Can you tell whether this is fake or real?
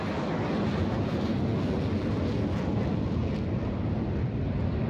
real